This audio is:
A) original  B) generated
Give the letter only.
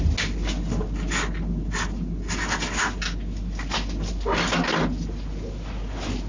A